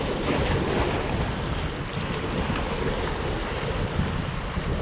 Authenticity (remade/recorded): recorded